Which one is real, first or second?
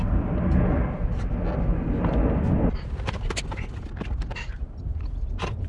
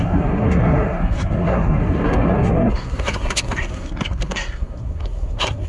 first